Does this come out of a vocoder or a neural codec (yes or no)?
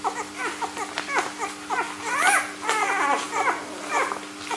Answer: no